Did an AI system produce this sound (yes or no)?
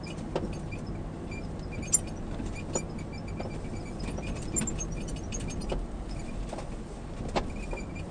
no